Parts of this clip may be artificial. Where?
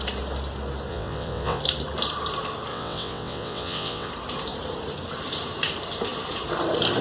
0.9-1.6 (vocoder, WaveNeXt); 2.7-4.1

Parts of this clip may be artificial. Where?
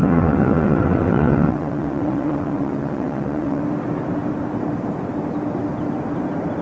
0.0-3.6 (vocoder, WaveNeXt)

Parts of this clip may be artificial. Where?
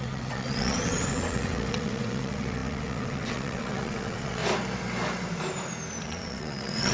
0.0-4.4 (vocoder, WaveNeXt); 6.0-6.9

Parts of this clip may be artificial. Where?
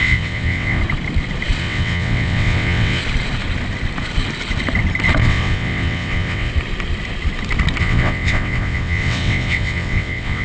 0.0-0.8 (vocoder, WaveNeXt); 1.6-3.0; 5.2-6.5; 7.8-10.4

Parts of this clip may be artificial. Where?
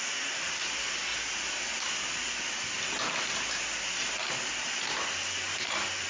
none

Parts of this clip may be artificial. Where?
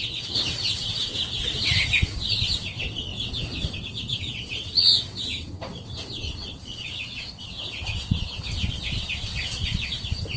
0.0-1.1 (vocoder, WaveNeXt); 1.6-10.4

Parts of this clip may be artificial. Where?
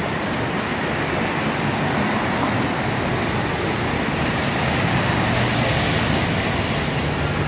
none